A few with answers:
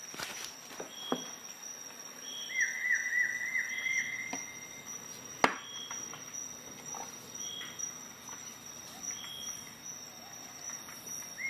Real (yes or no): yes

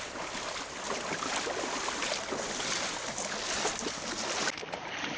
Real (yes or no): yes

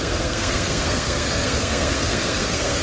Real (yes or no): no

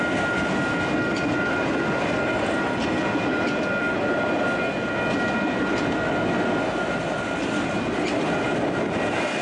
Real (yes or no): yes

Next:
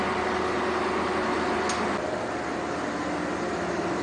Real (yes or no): yes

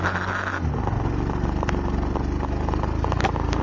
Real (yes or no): yes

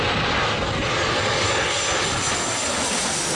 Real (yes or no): yes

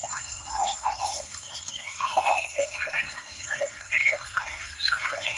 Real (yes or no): no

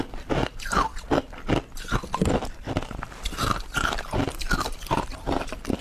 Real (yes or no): yes